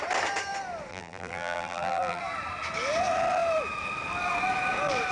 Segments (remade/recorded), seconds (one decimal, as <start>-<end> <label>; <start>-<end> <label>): 0.0-0.9 recorded; 0.9-2.2 remade; 2.2-5.1 recorded